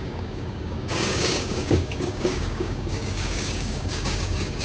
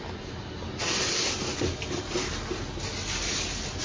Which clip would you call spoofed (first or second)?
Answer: first